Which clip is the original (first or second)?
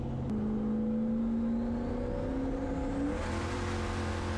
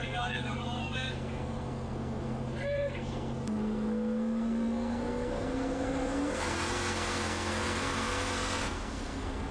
first